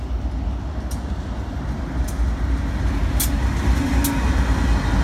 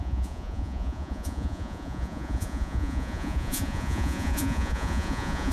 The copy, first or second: second